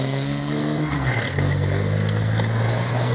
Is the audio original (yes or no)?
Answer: no